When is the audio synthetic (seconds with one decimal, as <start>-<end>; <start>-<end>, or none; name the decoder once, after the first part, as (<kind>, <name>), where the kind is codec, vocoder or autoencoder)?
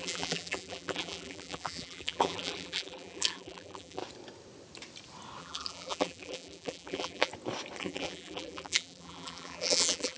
0.0-4.0 (vocoder, BigVGAN v2); 5.4-7.3; 7.8-10.2